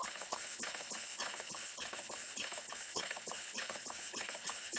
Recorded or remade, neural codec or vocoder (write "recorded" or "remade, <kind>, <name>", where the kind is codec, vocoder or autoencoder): remade, codec, HILCodec